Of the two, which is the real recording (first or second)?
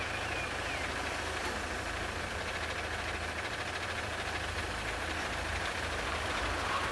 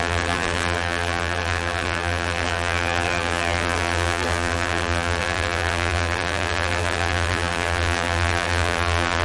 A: first